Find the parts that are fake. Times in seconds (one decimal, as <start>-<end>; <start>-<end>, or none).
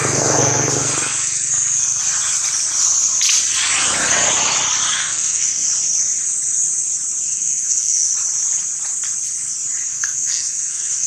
0.0-2.0; 5.0-5.7; 7.3-8.1; 9.9-11.1